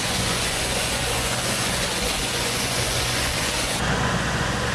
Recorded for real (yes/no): no